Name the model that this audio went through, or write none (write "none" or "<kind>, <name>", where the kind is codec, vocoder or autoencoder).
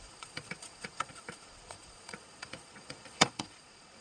vocoder, Vocos